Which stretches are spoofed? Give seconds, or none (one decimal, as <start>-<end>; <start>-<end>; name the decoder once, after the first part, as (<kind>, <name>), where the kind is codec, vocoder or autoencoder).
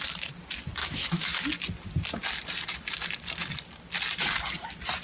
0.8-1.3 (autoencoder, DAC-VAE)